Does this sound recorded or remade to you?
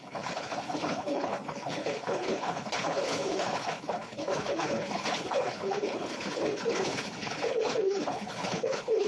remade